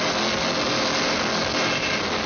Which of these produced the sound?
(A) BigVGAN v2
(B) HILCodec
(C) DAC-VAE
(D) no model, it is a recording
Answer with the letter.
D